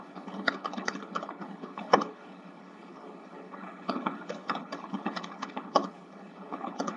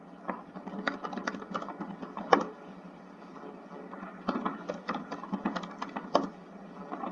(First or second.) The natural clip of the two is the second